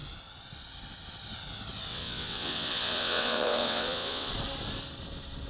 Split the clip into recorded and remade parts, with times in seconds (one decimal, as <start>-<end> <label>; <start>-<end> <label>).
0.0-1.9 recorded; 1.9-4.3 remade; 4.3-5.5 recorded